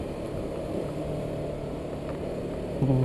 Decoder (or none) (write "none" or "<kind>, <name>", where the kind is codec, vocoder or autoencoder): none